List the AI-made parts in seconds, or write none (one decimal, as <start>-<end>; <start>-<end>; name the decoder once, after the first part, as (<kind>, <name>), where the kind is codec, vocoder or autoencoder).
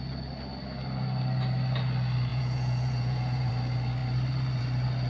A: 2.3-3.5 (vocoder, Vocos)